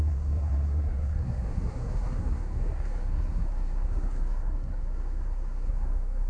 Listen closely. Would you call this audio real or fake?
fake